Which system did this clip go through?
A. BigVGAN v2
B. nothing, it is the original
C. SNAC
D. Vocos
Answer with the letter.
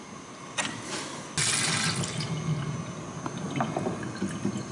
B